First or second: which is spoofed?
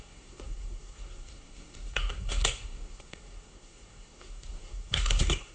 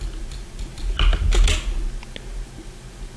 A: first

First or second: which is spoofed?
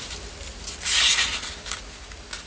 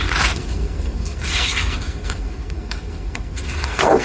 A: second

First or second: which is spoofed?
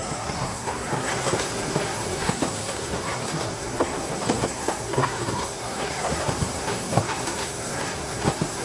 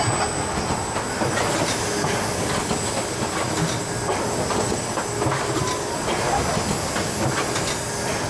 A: first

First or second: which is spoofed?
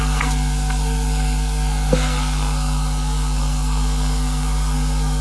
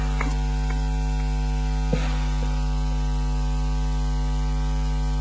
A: first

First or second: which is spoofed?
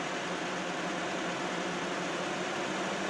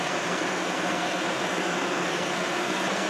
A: second